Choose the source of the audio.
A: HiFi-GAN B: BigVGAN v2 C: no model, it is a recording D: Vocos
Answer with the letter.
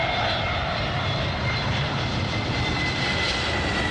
B